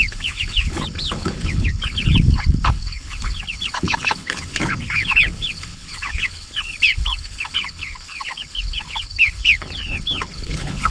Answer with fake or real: fake